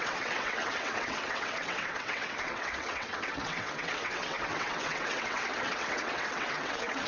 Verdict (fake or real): fake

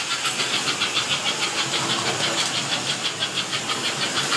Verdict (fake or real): real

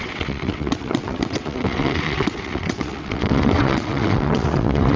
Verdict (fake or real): fake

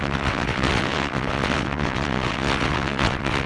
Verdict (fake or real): fake